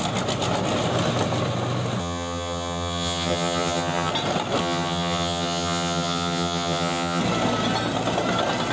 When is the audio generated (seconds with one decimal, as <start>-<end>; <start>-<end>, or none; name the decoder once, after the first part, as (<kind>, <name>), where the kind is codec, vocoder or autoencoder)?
2.0-4.1 (vocoder, HiFi-GAN); 4.6-7.2